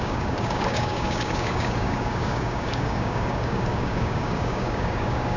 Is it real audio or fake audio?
fake